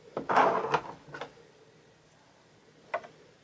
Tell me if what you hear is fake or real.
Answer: real